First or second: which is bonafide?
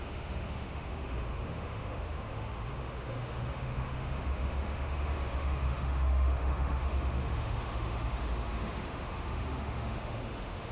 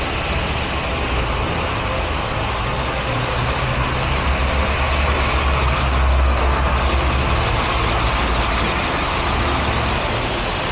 second